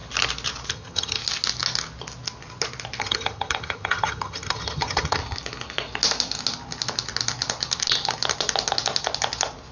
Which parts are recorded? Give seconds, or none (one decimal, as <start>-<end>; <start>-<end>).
0.0-0.7; 1.2-3.0; 5.2-9.7